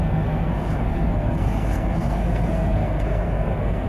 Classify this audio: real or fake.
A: fake